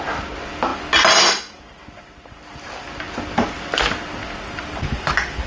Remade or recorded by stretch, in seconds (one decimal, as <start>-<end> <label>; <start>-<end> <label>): 0.0-5.5 recorded